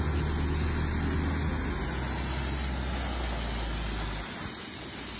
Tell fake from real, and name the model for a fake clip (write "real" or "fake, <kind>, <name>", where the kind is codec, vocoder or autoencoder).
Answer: real